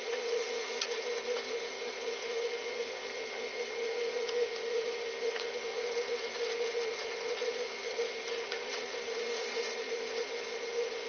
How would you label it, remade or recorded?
remade